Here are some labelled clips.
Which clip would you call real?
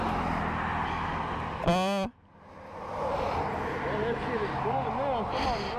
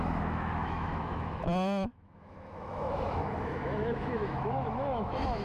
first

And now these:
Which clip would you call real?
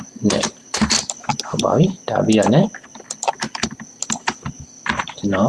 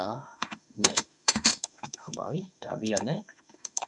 first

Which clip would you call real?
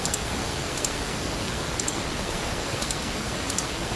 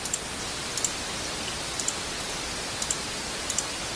second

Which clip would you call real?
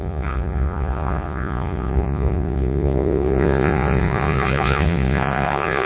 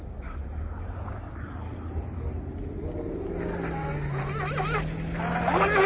second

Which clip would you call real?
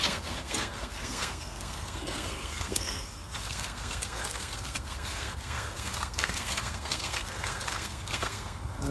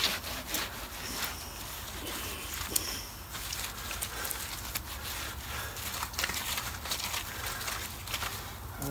second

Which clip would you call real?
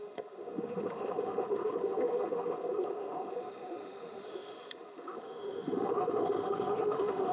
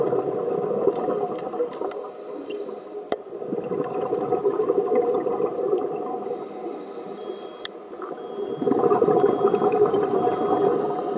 second